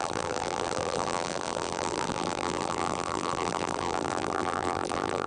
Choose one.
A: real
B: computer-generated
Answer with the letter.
B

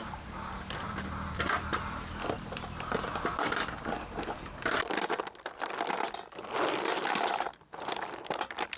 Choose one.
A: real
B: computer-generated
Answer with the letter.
B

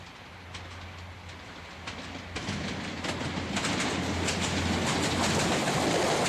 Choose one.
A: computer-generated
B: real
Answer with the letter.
B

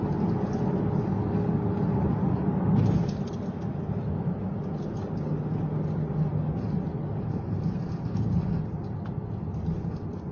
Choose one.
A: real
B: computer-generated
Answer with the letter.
A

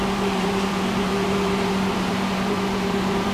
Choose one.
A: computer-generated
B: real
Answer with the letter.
A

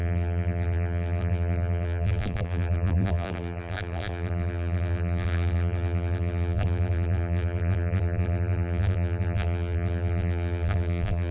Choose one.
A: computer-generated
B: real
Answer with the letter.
A